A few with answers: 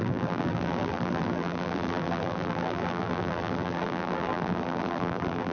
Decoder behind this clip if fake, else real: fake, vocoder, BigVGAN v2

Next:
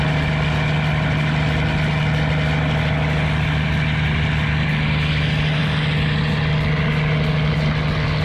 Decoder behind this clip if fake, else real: real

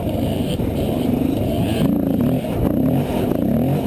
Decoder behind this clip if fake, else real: fake, vocoder, BigVGAN v2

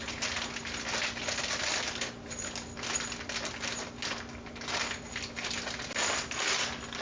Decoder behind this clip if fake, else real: real